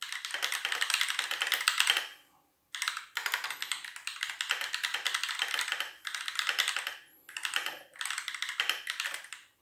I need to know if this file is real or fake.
real